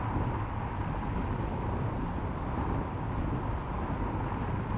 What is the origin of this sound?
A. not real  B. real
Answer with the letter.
B